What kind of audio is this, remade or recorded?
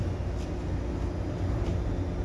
recorded